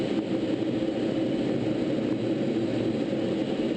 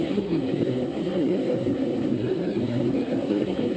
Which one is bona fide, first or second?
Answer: first